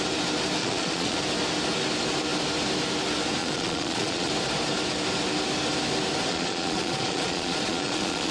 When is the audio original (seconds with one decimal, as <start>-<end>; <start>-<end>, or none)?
0.0-0.6; 1.2-3.4; 4.3-6.3